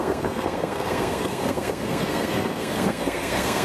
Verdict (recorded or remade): remade